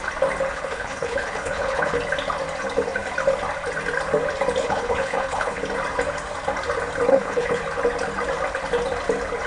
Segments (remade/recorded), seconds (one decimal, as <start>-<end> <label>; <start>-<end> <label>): 0.0-0.5 recorded; 0.5-2.0 remade; 2.0-4.6 recorded; 4.6-5.6 remade; 5.6-7.1 recorded; 7.1-7.6 remade; 7.6-9.5 recorded